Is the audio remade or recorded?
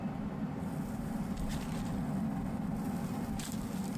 recorded